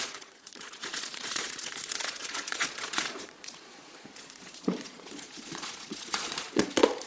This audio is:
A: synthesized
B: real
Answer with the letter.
A